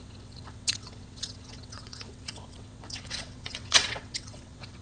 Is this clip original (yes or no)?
no